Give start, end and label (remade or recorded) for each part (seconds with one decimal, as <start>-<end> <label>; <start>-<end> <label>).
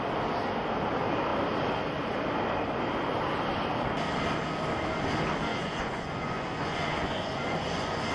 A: 0.0-5.5 recorded; 5.5-8.1 remade